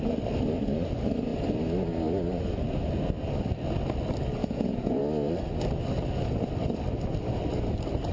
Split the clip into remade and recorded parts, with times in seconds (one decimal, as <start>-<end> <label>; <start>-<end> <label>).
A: 0.0-4.4 recorded; 4.4-5.0 remade; 5.0-8.1 recorded